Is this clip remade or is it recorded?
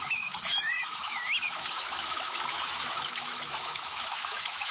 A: remade